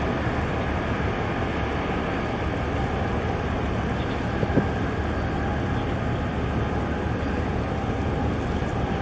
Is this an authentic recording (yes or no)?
yes